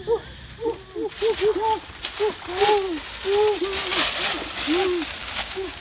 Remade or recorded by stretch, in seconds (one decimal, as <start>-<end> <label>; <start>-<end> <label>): 0.0-5.2 recorded; 5.2-5.8 remade